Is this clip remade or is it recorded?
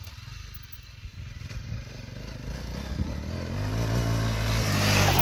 recorded